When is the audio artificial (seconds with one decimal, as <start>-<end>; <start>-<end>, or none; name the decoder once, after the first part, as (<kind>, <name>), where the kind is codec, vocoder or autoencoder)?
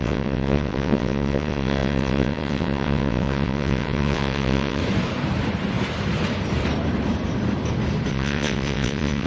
0.0-4.8 (vocoder, WaveNeXt); 8.1-9.3